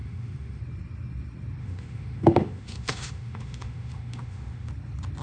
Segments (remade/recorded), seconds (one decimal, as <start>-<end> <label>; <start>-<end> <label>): 0.0-0.6 remade; 0.6-1.6 recorded; 1.6-4.7 remade; 4.7-5.2 recorded